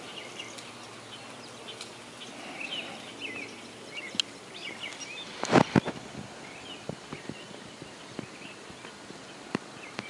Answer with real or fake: real